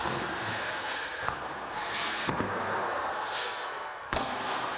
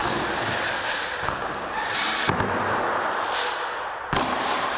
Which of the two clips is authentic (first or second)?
second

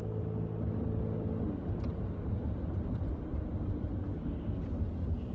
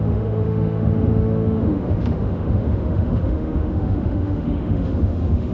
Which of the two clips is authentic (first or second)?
first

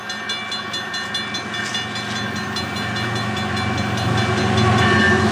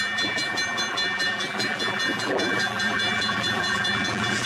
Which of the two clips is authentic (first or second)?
first